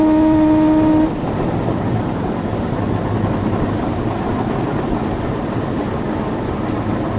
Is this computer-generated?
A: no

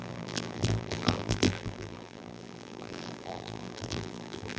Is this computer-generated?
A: yes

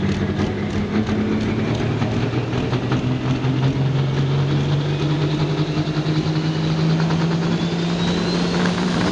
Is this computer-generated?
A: no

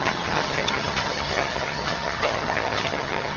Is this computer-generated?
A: yes